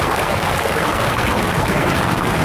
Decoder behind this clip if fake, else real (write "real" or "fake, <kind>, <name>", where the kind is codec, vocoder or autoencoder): fake, codec, SNAC